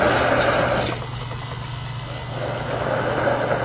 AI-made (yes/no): no